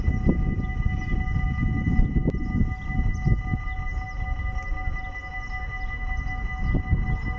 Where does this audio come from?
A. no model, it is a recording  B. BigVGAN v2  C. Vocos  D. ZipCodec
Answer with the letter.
A